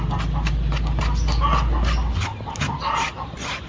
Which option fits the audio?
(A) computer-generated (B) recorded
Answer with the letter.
B